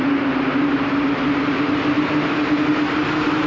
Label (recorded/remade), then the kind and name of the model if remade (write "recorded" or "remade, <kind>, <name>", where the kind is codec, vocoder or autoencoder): recorded